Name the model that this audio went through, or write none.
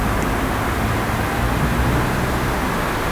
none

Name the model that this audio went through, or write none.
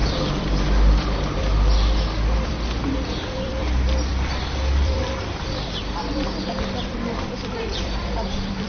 vocoder, BigVGAN v2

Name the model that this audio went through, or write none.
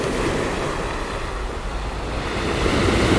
none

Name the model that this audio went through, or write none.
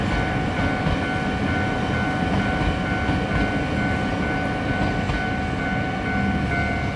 none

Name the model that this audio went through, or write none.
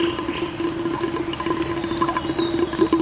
none